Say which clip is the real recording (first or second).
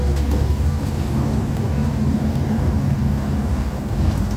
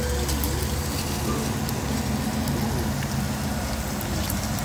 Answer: second